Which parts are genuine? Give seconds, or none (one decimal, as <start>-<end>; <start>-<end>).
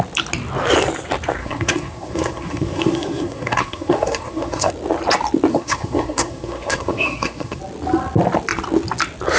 0.0-1.4; 4.7-5.5; 7.6-9.4